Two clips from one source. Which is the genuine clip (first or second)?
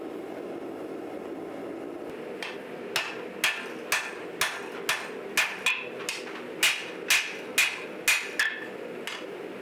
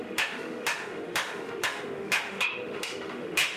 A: first